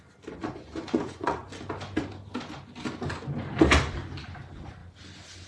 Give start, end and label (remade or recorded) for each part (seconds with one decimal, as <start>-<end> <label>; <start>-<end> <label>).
0.0-0.4 recorded; 0.4-1.4 remade; 1.4-5.5 recorded